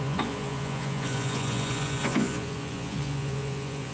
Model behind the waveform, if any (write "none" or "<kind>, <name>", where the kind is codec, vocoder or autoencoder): vocoder, Vocos